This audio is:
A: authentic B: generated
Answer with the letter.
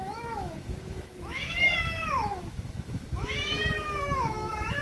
B